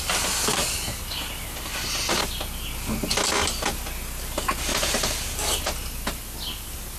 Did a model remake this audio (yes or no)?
no